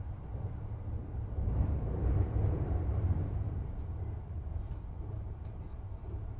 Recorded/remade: remade